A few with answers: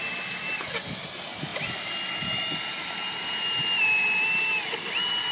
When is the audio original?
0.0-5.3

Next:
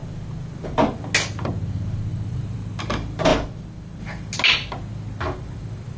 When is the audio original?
0.0-2.1; 2.8-6.0

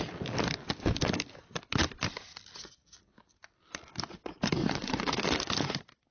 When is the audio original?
0.0-4.6; 5.2-6.1

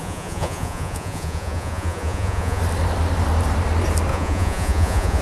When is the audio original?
2.6-4.1

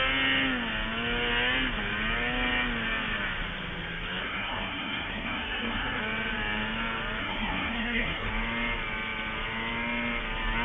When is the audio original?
0.0-4.2; 6.0-7.2; 8.3-10.6

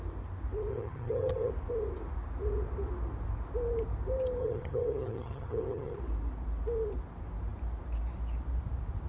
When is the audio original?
0.0-0.7; 1.5-4.4; 6.0-9.1